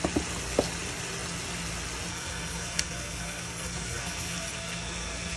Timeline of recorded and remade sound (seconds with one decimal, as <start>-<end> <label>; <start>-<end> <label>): 0.0-2.1 recorded; 2.1-5.4 remade